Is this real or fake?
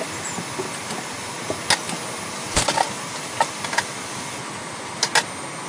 real